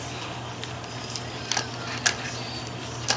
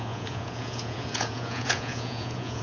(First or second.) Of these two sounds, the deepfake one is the second